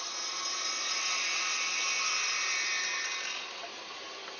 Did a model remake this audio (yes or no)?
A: no